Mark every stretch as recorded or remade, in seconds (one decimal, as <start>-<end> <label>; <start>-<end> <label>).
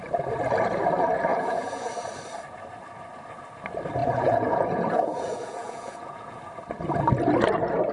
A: 0.0-1.3 recorded; 1.3-1.9 remade; 1.9-4.0 recorded; 4.0-6.4 remade; 6.4-7.9 recorded